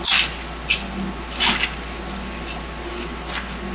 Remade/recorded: recorded